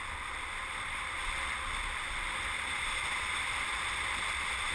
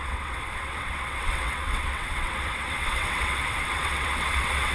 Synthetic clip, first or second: second